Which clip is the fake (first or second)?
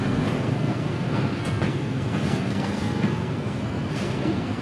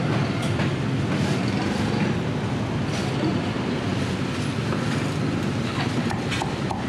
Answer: first